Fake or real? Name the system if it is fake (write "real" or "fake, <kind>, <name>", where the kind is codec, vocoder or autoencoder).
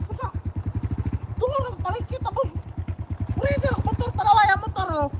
real